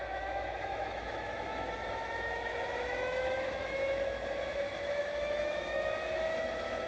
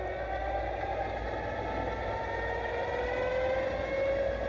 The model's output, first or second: first